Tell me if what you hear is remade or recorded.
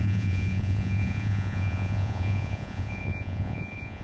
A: remade